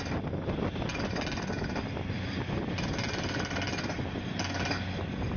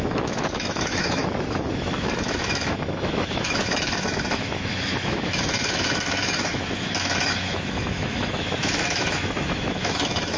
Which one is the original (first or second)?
first